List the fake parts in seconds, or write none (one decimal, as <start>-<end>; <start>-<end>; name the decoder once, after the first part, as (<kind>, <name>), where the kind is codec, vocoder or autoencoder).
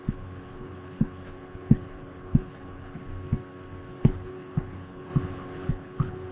0.0-3.0 (codec, HILCodec); 4.0-6.3